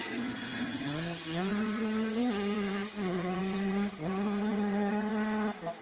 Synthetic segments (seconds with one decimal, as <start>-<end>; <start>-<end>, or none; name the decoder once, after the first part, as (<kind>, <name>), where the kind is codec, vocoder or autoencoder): 0.0-5.1 (vocoder, HiFi-GAN)